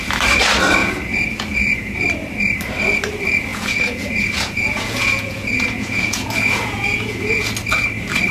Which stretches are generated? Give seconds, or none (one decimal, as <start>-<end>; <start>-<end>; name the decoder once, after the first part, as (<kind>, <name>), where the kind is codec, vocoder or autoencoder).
0.8-2.0 (vocoder, Vocos); 3.5-7.5